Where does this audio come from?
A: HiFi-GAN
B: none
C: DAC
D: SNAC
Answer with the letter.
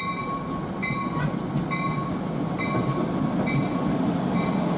B